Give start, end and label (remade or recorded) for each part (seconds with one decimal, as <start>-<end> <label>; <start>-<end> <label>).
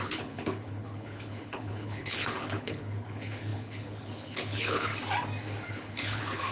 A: 0.0-4.9 remade; 4.9-5.7 recorded; 5.7-6.5 remade